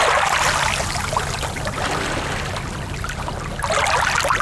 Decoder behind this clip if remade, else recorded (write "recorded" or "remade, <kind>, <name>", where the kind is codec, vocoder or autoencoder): recorded